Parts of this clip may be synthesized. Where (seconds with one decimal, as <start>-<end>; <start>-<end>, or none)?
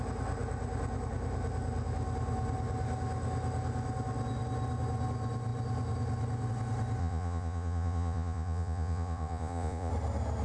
7.0-9.9